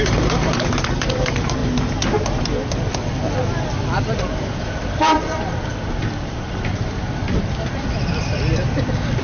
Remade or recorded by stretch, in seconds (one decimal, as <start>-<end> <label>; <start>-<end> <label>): 0.0-1.6 remade; 1.6-2.4 recorded; 2.4-9.2 remade

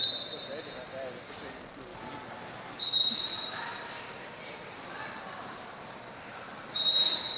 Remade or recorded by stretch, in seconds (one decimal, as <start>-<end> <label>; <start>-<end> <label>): 0.0-1.9 remade; 1.9-2.8 recorded; 2.8-7.4 remade

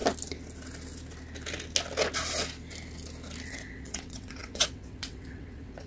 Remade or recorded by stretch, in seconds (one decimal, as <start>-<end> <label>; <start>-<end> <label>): 0.0-3.5 recorded; 3.5-5.9 remade